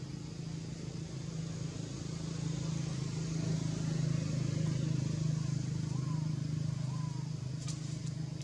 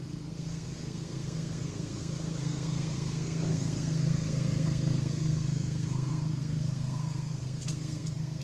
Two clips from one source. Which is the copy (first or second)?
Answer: second